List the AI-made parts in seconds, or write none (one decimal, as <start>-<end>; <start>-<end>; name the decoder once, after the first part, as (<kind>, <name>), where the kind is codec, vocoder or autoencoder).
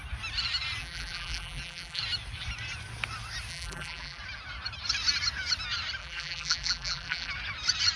0.8-2.0 (vocoder, BigVGAN v2); 3.5-4.2; 6.0-7.3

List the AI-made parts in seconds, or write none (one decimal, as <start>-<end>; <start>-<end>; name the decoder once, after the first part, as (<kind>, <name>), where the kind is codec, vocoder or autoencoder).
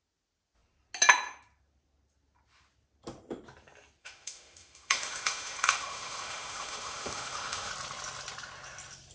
4.0-7.7 (autoencoder, DAC-VAE)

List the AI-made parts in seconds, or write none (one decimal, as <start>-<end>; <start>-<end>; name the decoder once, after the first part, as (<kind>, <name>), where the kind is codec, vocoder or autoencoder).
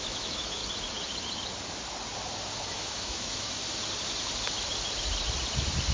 0.0-0.6 (autoencoder, DAC-VAE); 2.7-3.6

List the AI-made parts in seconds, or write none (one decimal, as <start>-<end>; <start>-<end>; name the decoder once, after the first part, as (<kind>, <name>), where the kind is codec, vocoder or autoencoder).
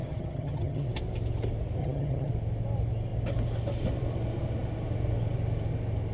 0.0-0.9 (vocoder, HiFi-GAN); 1.8-2.3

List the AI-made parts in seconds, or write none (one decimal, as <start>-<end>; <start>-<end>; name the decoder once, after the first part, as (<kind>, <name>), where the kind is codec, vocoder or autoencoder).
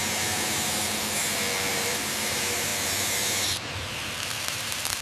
1.7-2.7 (vocoder, BigVGAN v2); 4.5-5.0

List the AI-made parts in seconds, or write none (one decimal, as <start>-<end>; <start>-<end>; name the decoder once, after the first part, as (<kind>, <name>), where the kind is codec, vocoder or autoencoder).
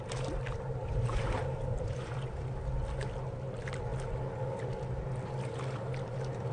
0.8-2.4 (vocoder, BigVGAN v2)